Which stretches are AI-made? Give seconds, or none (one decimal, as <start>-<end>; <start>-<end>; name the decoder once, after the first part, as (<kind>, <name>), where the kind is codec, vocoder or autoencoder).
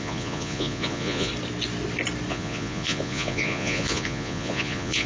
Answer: 0.0-1.3 (vocoder, Vocos); 2.3-5.1